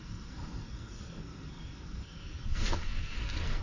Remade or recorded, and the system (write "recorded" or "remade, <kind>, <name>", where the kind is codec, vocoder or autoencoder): remade, codec, SNAC